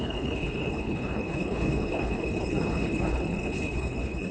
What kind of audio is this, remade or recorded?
remade